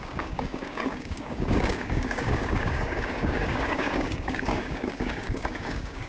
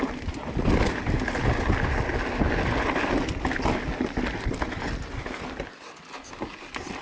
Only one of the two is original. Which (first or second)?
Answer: second